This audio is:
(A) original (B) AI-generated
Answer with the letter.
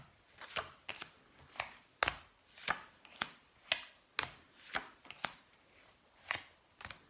A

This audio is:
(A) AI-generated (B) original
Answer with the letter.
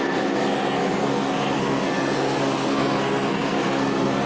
A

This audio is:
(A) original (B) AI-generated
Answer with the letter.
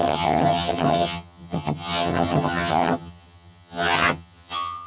B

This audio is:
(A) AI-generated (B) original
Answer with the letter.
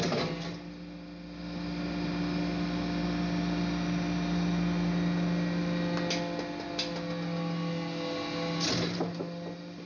B